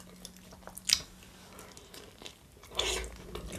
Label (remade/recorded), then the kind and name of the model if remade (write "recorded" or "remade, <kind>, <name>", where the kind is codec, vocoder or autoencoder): recorded